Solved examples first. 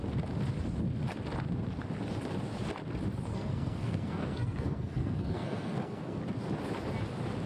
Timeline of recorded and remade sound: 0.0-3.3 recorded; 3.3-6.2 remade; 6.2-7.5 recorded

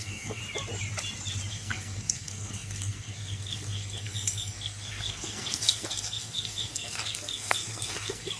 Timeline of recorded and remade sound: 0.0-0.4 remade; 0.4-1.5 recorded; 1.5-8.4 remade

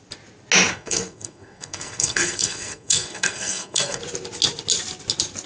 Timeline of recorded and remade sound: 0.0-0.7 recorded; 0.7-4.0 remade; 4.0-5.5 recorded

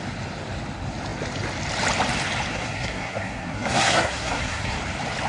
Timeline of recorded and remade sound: 0.0-2.5 recorded; 2.5-4.8 remade; 4.8-5.3 recorded

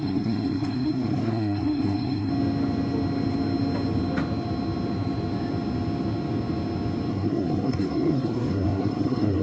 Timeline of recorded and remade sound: 0.0-2.3 remade; 2.3-7.1 recorded; 7.1-9.4 remade

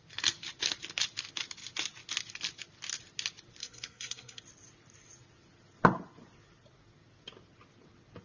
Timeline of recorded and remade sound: 0.0-3.6 recorded; 3.6-4.4 remade; 4.4-8.2 recorded